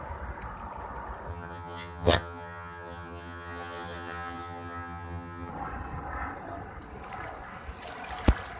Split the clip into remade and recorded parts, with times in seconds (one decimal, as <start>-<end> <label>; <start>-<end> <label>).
0.0-1.3 recorded; 1.3-5.5 remade; 5.5-8.6 recorded